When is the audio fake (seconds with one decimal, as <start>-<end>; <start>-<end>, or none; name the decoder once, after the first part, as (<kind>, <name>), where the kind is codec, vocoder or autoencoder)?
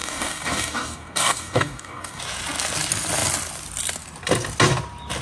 0.0-2.2 (codec, DAC)